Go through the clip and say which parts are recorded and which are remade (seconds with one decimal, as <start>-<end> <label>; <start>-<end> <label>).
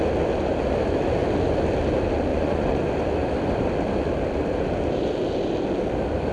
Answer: 0.0-2.3 recorded; 2.3-2.8 remade; 2.8-6.3 recorded